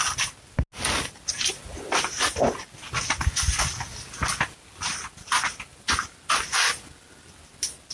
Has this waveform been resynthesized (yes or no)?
no